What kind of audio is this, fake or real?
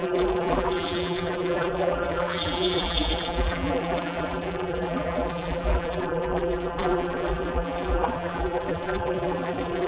fake